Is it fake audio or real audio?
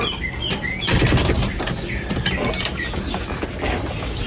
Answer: real